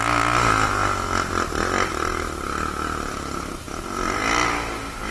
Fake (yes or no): no